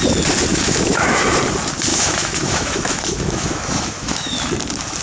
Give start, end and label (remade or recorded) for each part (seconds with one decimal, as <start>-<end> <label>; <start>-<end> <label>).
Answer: 0.0-0.5 recorded; 0.5-1.2 remade; 1.2-1.9 recorded; 1.9-4.5 remade; 4.5-5.0 recorded